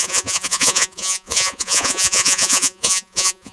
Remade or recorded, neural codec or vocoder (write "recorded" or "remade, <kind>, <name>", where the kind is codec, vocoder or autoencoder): remade, vocoder, Vocos